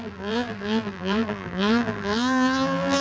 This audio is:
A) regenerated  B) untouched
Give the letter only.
A